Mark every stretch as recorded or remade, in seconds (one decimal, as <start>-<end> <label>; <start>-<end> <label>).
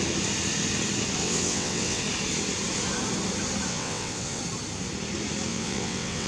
0.0-1.2 recorded; 1.2-2.0 remade; 2.0-3.7 recorded; 3.7-4.4 remade; 4.4-5.5 recorded; 5.5-6.3 remade